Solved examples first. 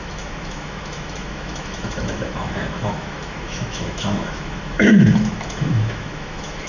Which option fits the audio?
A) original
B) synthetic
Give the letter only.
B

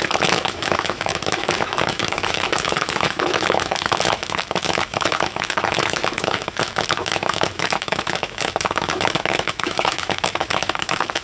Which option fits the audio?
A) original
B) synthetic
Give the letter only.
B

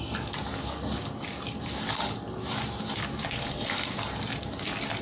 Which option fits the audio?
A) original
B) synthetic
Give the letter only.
A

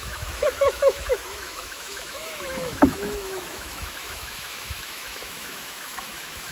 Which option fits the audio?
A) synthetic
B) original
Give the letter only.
A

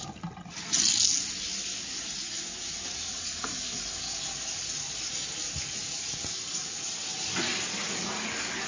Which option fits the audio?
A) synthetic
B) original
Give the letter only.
B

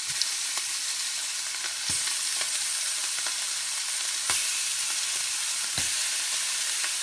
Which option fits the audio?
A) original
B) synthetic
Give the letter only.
A